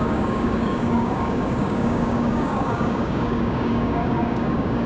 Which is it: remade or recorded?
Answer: remade